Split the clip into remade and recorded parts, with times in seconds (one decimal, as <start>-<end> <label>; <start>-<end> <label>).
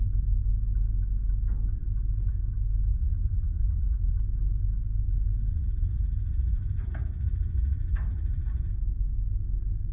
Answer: 0.0-2.9 recorded; 2.9-4.1 remade; 4.1-5.5 recorded; 5.5-8.7 remade; 8.7-9.9 recorded